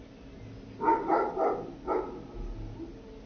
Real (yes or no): yes